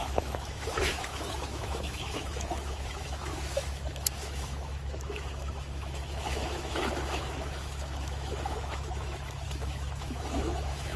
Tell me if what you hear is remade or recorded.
remade